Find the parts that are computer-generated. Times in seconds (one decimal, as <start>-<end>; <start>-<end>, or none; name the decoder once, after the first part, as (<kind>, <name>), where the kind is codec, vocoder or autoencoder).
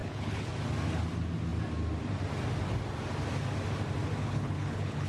0.0-0.5 (codec, HILCodec); 4.2-5.1